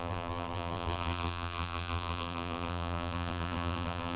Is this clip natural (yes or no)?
no